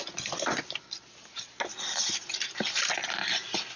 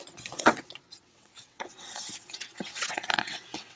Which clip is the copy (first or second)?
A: second